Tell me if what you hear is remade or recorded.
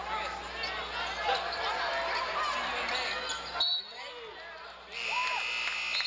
recorded